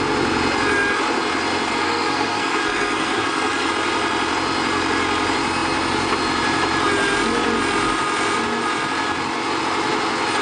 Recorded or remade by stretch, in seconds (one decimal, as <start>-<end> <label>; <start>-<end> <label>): 0.0-1.7 recorded; 1.7-3.7 remade; 3.7-10.4 recorded